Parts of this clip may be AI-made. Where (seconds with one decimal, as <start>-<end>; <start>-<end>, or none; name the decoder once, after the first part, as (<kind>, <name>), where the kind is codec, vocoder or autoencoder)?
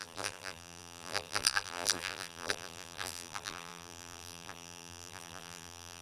0.0-6.0 (vocoder, BigVGAN v2)